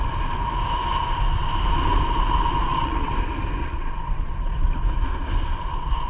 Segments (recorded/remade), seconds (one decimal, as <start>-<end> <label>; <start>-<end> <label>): 0.0-2.6 recorded; 2.6-3.1 remade; 3.1-3.6 recorded; 3.6-4.6 remade; 4.6-6.1 recorded